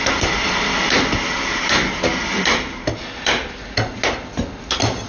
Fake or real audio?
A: real